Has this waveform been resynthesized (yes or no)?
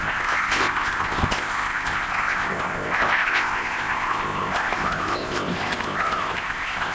yes